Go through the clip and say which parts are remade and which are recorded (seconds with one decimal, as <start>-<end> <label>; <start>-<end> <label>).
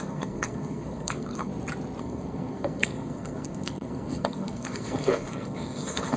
0.0-1.5 remade; 1.5-2.0 recorded; 2.0-6.2 remade